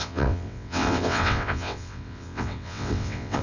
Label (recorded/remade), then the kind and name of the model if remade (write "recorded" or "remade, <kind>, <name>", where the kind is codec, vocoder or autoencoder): remade, vocoder, WaveNeXt